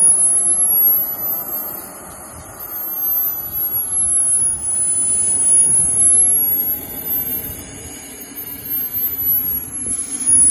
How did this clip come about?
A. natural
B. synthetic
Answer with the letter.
A